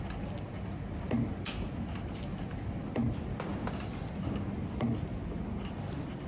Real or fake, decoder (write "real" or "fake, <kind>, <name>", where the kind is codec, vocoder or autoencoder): real